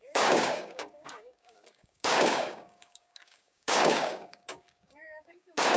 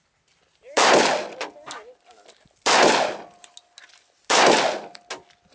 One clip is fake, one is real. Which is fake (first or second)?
first